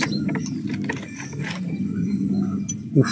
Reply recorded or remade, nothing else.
recorded